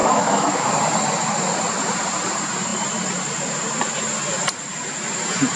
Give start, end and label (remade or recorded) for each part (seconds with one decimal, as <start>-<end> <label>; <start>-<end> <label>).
0.0-0.7 remade; 0.7-5.6 recorded